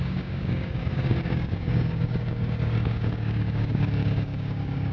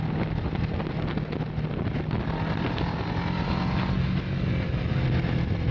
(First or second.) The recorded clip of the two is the second